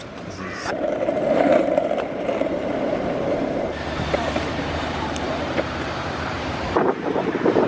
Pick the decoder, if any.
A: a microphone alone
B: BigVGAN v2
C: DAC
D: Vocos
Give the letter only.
B